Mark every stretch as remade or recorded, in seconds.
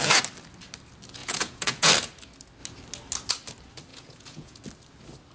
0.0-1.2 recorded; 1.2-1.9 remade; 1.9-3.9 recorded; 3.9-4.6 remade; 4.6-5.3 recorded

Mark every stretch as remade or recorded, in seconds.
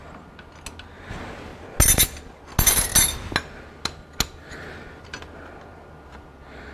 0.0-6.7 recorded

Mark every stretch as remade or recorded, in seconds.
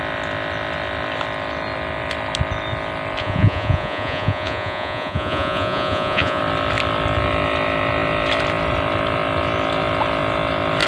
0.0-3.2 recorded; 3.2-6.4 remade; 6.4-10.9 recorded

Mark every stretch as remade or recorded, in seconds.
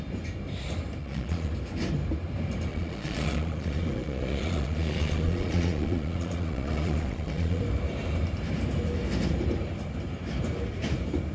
0.0-1.0 recorded; 1.0-1.5 remade; 1.5-2.7 recorded; 2.7-7.6 remade; 7.6-11.3 recorded